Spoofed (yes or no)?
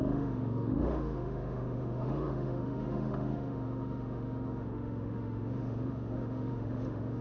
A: yes